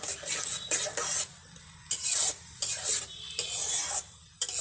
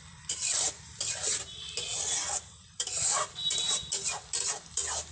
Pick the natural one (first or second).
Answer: first